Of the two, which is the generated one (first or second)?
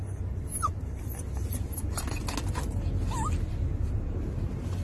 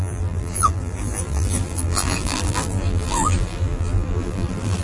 second